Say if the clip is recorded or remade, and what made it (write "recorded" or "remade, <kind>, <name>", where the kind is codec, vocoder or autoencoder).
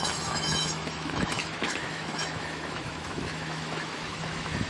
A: remade, autoencoder, DAC-VAE